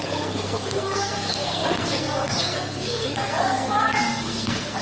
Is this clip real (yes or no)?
no